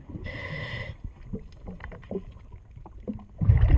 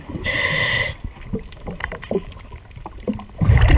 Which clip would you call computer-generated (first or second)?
second